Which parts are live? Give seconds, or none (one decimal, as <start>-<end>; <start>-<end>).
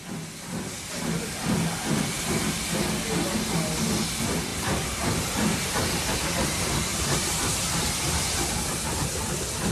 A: 0.0-4.5; 6.1-6.9; 7.9-9.7